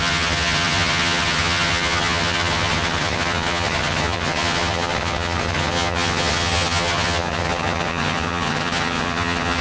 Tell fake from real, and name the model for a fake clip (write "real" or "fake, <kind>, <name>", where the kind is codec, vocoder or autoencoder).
fake, vocoder, HiFi-GAN